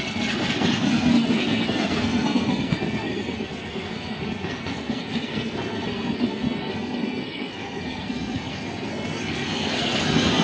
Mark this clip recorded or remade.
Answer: remade